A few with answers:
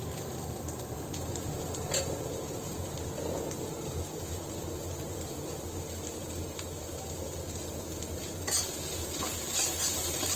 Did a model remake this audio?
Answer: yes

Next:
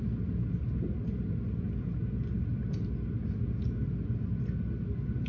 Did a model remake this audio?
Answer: no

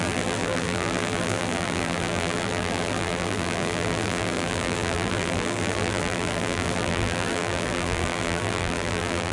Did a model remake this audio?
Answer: yes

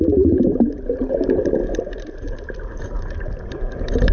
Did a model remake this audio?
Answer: yes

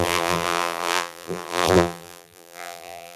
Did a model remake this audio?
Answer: yes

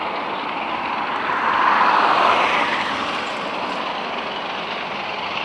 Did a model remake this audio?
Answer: yes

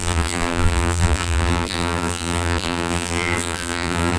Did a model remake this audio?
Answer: yes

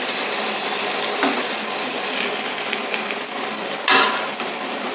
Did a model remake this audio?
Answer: yes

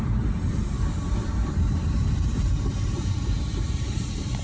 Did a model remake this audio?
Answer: yes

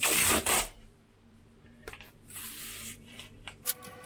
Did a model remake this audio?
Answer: yes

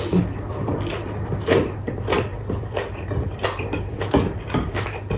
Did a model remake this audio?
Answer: yes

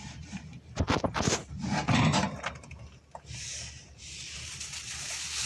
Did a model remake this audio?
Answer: yes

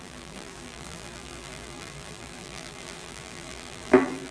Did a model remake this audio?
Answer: yes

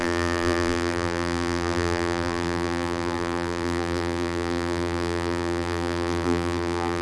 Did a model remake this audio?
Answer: yes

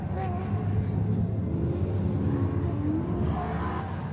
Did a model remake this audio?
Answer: no